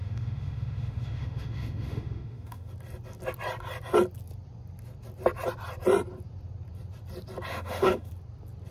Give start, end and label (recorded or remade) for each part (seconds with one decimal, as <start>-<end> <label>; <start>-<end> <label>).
0.0-2.7 remade; 2.7-7.5 recorded; 7.5-8.1 remade; 8.1-8.7 recorded

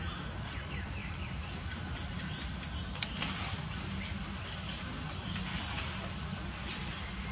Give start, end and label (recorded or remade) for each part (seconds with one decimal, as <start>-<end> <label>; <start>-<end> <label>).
0.0-1.0 recorded; 1.0-5.2 remade; 5.2-7.3 recorded

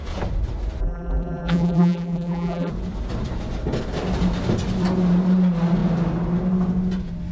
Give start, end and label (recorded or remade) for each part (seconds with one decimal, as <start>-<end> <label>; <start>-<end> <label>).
0.0-0.8 recorded; 0.8-2.7 remade; 2.7-7.3 recorded

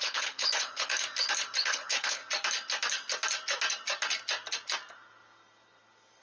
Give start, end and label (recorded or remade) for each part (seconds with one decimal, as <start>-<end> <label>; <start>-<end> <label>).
0.0-0.9 remade; 0.9-1.6 recorded; 1.6-2.2 remade; 2.2-6.2 recorded

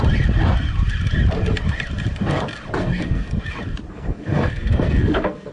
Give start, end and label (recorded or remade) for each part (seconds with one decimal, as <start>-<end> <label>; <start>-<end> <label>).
0.0-2.8 recorded; 2.8-3.3 remade; 3.3-3.9 recorded; 3.9-5.5 remade

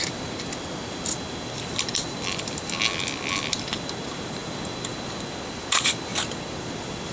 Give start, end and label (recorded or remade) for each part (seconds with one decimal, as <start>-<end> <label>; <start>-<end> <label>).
0.0-7.1 recorded

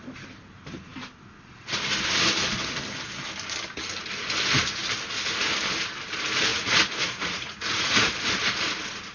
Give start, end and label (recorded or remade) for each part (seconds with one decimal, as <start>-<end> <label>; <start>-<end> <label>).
0.0-6.5 recorded; 6.5-8.1 remade; 8.1-9.1 recorded

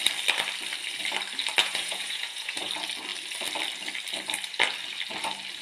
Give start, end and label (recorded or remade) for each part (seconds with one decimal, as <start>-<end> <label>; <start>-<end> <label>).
0.0-1.6 recorded; 1.6-2.7 remade; 2.7-5.6 recorded